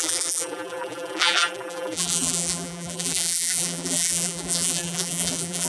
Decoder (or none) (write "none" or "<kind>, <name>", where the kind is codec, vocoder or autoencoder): vocoder, BigVGAN v2